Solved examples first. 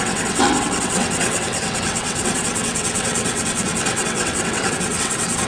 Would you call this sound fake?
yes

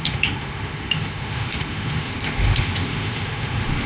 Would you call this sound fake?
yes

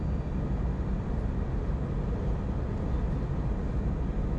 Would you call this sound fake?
no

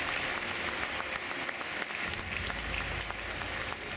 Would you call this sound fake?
no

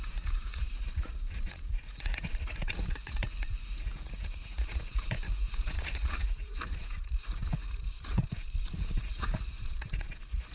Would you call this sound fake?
yes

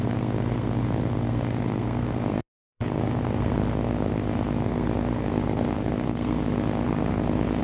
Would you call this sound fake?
yes